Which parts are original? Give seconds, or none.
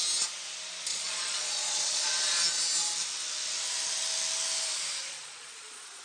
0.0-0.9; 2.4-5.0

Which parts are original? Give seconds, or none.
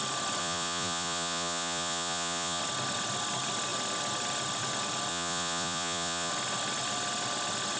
0.0-0.4; 2.6-5.1; 6.3-7.8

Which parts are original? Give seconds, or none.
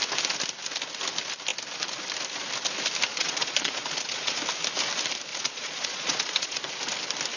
0.0-3.1; 4.4-5.3; 6.7-7.4